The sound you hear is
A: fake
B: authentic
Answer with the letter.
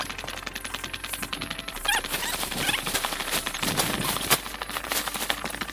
B